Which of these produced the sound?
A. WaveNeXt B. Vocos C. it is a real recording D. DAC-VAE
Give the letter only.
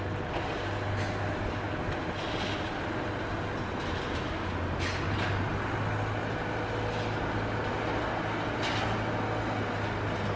C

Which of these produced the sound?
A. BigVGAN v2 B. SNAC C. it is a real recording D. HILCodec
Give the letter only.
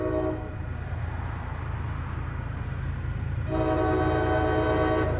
C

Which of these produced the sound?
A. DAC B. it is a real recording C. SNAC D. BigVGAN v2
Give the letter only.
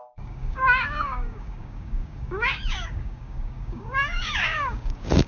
A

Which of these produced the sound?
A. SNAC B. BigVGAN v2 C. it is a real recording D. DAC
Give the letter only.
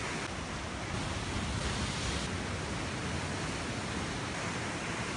C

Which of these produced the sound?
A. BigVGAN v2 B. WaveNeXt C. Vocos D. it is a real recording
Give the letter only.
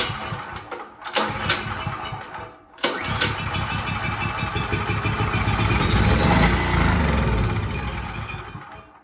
D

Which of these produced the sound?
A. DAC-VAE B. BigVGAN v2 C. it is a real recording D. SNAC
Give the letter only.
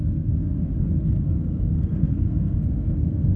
D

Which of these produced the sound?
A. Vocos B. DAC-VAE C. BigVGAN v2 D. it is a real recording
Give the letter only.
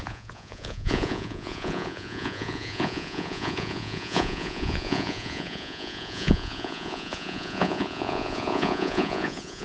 A